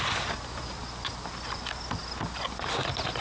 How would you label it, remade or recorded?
recorded